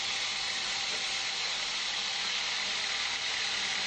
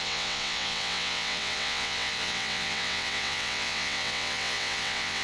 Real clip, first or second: first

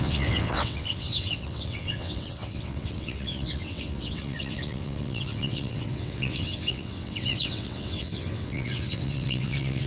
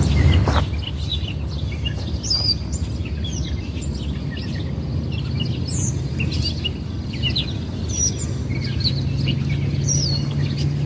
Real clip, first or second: second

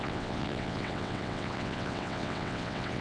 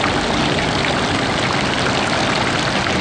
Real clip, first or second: second